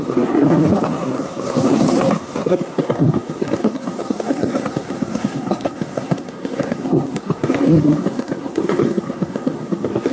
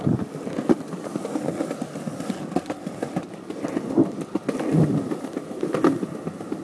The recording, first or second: second